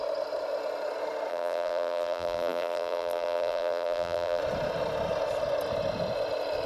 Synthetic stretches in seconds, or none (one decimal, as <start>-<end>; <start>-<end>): 1.3-4.4